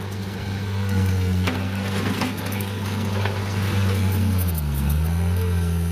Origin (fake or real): fake